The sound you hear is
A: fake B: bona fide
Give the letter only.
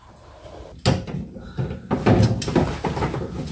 B